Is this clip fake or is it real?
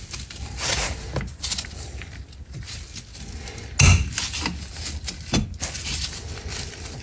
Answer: real